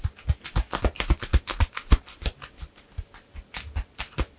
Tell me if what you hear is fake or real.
real